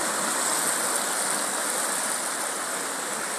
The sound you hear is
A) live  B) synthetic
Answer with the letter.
A